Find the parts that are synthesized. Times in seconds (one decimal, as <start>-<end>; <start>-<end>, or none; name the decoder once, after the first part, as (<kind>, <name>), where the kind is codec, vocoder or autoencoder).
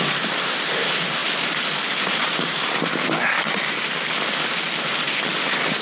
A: none